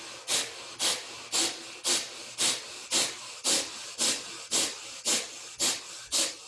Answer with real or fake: real